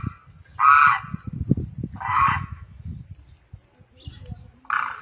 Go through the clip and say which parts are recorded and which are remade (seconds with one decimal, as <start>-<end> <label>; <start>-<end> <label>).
0.0-2.1 recorded; 2.1-2.8 remade; 2.8-5.0 recorded